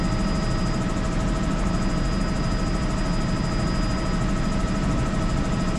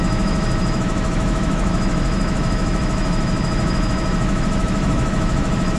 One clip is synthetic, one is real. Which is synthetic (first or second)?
second